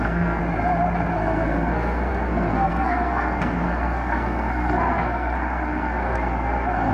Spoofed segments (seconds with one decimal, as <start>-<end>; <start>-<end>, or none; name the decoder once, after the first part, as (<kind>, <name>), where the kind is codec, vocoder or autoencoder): 0.0-0.4 (codec, SNAC); 1.1-6.9

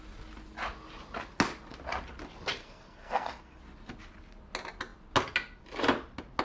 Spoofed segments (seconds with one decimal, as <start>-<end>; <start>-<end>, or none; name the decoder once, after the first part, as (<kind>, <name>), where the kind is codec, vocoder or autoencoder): 2.6-3.6 (codec, SNAC)

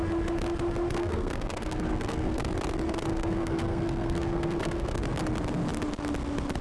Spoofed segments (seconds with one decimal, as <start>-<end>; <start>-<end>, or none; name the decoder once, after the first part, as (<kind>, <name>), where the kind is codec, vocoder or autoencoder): 1.0-2.5 (codec, SNAC); 3.1-5.0